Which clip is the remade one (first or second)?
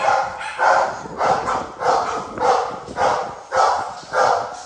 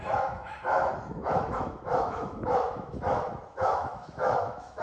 second